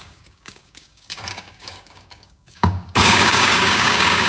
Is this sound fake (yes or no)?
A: yes